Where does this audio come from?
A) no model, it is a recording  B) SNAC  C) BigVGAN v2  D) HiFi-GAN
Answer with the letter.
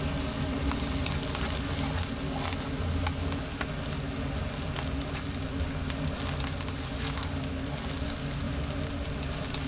A